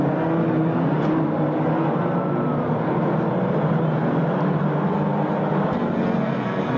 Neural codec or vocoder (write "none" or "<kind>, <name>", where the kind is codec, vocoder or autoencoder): none